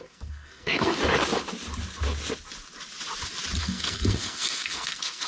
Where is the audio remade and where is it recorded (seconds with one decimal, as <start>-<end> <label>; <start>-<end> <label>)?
0.0-0.9 remade; 0.9-3.6 recorded; 3.6-5.3 remade